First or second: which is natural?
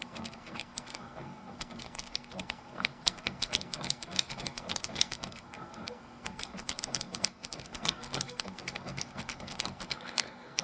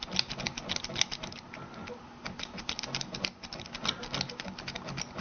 second